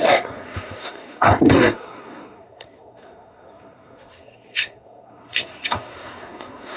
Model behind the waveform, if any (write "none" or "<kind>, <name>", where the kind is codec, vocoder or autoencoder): codec, SNAC